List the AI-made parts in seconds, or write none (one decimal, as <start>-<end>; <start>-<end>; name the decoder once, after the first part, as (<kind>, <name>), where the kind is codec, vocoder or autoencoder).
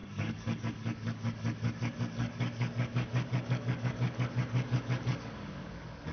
0.0-6.1 (codec, DAC)